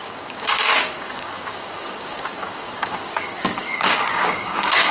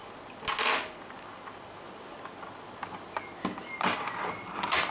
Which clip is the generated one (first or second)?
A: first